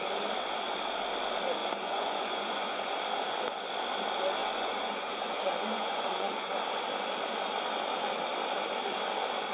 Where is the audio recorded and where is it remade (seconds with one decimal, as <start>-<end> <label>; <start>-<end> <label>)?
0.0-1.6 recorded; 1.6-3.0 remade; 3.0-4.4 recorded; 4.4-6.5 remade; 6.5-9.5 recorded